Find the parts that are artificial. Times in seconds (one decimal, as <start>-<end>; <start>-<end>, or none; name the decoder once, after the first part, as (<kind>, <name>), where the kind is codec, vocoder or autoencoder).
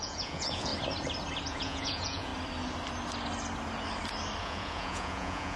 0.0-0.7 (vocoder, Vocos); 1.5-2.3; 4.4-5.6